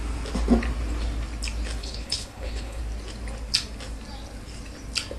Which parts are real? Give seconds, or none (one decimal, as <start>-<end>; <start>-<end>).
0.0-1.8; 2.8-5.2